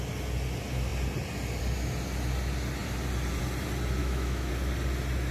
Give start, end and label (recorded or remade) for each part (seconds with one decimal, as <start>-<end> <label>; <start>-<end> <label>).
0.0-4.0 recorded; 4.0-4.5 remade; 4.5-5.3 recorded